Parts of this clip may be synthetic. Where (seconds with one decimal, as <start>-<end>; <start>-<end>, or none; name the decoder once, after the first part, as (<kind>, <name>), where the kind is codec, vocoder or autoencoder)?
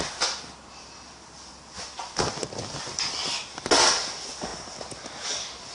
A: none